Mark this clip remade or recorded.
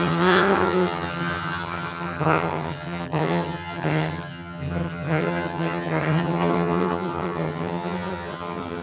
remade